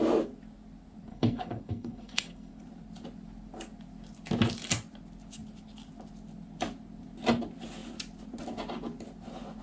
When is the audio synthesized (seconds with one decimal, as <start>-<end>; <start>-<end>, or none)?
1.1-2.5